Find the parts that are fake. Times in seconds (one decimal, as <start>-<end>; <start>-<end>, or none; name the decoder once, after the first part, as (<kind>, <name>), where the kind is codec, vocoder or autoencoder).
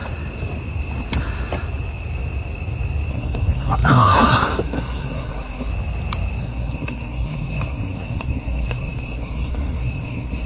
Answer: 3.1-5.7 (codec, SNAC); 6.4-10.5